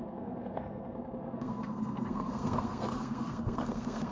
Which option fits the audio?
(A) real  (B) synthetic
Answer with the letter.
B